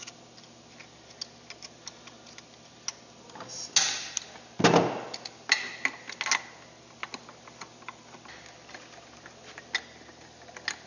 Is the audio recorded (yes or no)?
yes